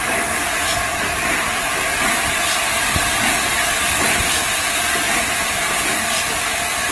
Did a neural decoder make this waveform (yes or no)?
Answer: no